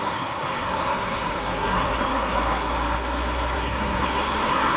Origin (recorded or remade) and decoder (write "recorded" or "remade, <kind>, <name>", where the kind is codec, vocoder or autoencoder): remade, codec, SNAC